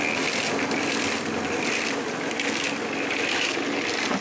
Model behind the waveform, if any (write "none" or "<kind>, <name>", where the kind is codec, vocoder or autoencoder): none